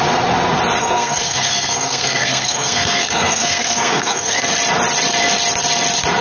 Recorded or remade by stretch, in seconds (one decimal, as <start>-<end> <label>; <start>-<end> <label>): 0.0-0.8 recorded; 0.8-4.4 remade; 4.4-6.2 recorded